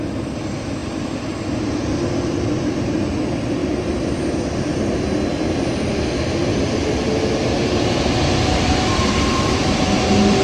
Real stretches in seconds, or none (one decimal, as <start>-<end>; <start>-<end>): 0.0-6.5; 9.8-10.4